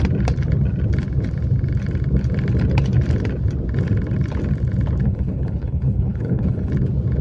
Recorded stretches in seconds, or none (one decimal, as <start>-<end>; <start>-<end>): 0.0-5.0; 6.7-7.2